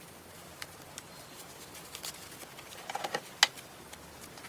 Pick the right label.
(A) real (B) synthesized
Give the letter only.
A